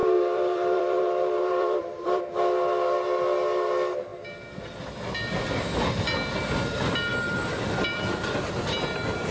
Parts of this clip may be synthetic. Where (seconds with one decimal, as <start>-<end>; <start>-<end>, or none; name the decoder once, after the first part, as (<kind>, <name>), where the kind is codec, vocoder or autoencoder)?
0.0-2.2 (vocoder, BigVGAN v2); 7.1-8.4